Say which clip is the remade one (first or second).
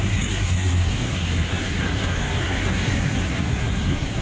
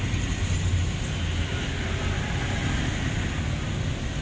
first